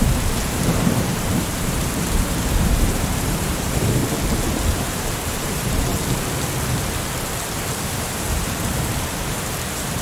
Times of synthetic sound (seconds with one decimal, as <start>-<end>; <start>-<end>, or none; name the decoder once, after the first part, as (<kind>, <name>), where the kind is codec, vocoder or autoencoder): 0.0-4.0 (vocoder, BigVGAN v2); 4.7-5.9; 8.0-10.0